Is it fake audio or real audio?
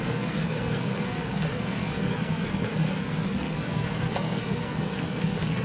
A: fake